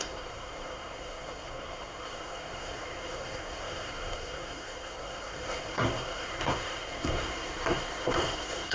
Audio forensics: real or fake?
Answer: fake